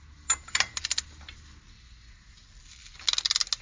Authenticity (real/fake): real